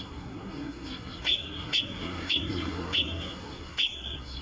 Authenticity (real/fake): fake